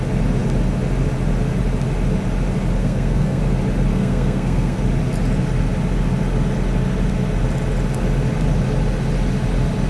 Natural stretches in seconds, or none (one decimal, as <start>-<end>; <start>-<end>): 0.0-2.8; 3.4-3.9; 4.8-9.9